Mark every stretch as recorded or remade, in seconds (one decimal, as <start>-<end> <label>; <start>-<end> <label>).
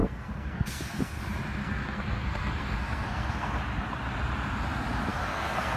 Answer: 0.0-1.2 remade; 1.2-1.6 recorded; 1.6-3.6 remade; 3.6-5.1 recorded; 5.1-5.8 remade